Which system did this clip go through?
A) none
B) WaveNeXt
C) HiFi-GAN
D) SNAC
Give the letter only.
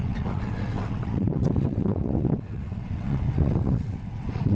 B